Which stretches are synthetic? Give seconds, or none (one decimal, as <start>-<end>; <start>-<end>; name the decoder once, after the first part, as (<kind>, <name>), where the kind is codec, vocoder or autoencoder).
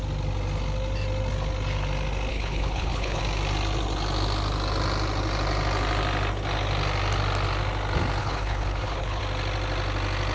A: 2.3-3.2 (codec, HILCodec); 8.2-9.2